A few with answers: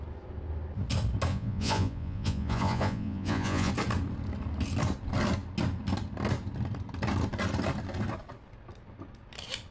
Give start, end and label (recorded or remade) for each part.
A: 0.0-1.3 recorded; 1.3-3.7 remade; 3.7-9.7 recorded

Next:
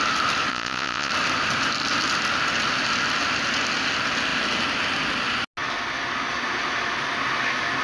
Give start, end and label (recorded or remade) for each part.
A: 0.0-0.5 recorded; 0.5-1.1 remade; 1.1-7.8 recorded

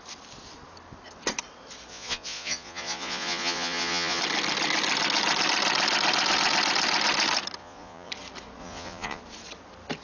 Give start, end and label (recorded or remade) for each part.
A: 0.0-1.9 recorded; 1.9-4.2 remade; 4.2-7.6 recorded; 7.6-8.1 remade; 8.1-8.6 recorded; 8.6-9.2 remade; 9.2-10.0 recorded

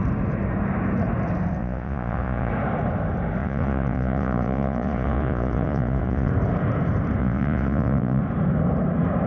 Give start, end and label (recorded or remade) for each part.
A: 0.0-1.6 recorded; 1.6-2.5 remade; 2.5-3.4 recorded; 3.4-6.3 remade; 6.3-7.2 recorded; 7.2-8.2 remade; 8.2-9.3 recorded

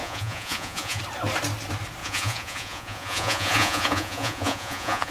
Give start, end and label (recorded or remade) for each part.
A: 0.0-1.0 remade; 1.0-2.0 recorded; 2.0-5.1 remade